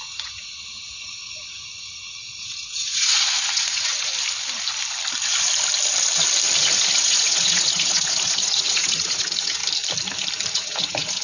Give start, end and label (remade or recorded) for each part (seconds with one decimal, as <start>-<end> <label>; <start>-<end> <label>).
0.0-4.1 remade; 4.1-6.9 recorded; 6.9-9.6 remade; 9.6-10.5 recorded; 10.5-11.2 remade